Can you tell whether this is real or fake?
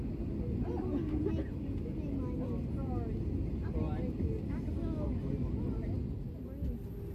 real